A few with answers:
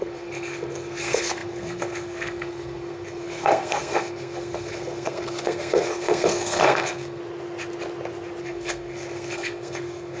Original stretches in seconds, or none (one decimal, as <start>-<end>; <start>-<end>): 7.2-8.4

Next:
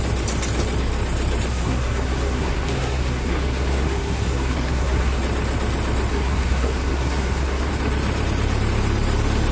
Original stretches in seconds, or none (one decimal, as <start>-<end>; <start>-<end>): 0.0-1.5; 5.2-6.1; 7.7-9.5

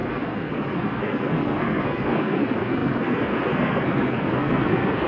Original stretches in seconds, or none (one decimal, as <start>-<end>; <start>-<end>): none

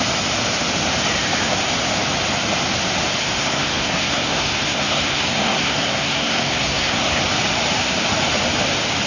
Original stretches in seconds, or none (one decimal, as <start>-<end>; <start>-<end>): 0.0-3.2; 7.2-9.1

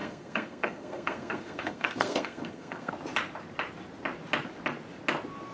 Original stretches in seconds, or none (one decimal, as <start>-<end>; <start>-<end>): 2.9-5.5

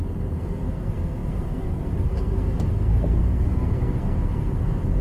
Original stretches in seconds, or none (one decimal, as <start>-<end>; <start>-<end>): none